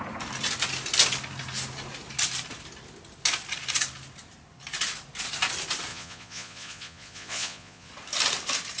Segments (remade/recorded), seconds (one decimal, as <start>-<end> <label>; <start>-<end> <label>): 0.0-5.9 recorded; 5.9-7.9 remade; 7.9-8.8 recorded